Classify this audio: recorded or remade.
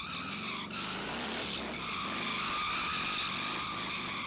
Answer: recorded